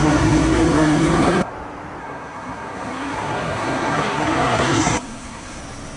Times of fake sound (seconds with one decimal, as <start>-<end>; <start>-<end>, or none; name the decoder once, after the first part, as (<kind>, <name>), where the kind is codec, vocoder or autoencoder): 0.0-1.5 (codec, SNAC); 2.0-5.6